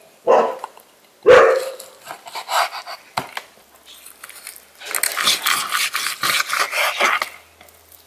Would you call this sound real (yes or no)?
yes